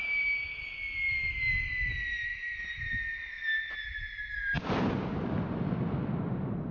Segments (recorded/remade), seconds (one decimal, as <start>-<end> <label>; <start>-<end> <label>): 0.0-6.7 recorded